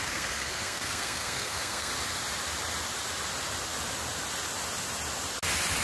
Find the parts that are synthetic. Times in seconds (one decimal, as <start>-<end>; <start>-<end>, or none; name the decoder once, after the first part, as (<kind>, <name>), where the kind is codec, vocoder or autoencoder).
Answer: 0.0-1.9 (codec, SNAC)